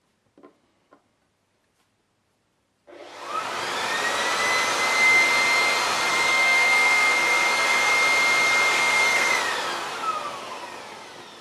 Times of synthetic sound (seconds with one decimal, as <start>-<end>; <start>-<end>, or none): 6.1-7.9; 8.7-9.3